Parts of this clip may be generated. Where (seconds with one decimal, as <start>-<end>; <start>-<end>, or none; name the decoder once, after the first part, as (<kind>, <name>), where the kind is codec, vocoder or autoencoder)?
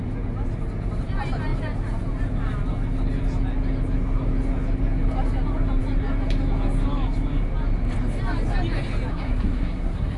9.1-10.2 (codec, SNAC)